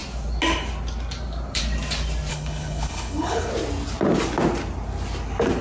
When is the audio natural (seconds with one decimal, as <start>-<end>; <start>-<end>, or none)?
0.0-2.3; 3.5-5.6